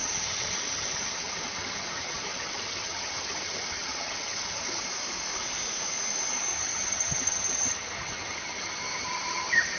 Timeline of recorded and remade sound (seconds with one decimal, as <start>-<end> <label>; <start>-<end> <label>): 0.0-4.8 remade; 4.8-6.5 recorded; 6.5-9.8 remade